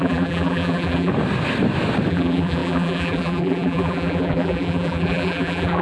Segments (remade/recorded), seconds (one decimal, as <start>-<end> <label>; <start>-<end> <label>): 0.0-1.1 remade; 1.1-2.1 recorded; 2.1-5.8 remade